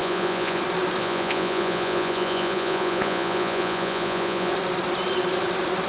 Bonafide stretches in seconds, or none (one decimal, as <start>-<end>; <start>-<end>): 0.6-1.0; 4.5-5.9